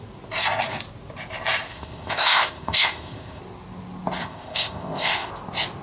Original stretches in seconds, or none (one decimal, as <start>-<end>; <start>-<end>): 0.0-1.7; 3.4-4.2; 5.3-5.8